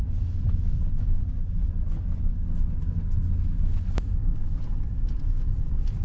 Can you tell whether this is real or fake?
real